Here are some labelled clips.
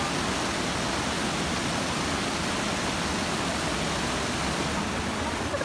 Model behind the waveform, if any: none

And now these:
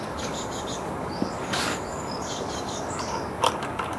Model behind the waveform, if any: codec, DAC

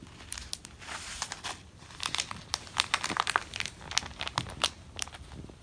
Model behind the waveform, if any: none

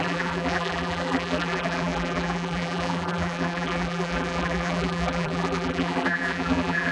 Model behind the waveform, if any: vocoder, BigVGAN v2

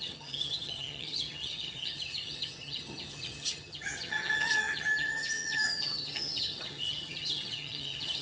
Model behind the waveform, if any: vocoder, HiFi-GAN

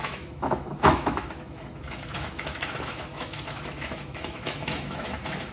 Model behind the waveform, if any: autoencoder, DAC-VAE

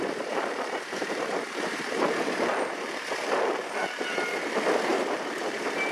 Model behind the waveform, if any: vocoder, BigVGAN v2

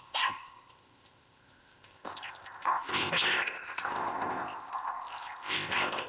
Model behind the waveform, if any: codec, ZipCodec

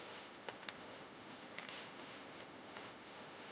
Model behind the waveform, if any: autoencoder, DAC-VAE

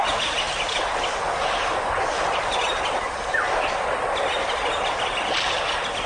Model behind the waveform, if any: none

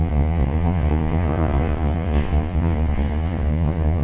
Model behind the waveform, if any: vocoder, Vocos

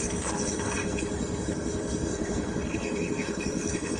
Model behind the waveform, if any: codec, SNAC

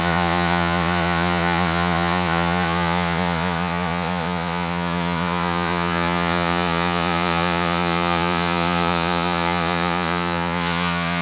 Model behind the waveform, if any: vocoder, Vocos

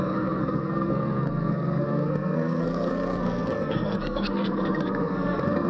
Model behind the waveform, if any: codec, SNAC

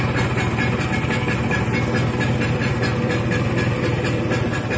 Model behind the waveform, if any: none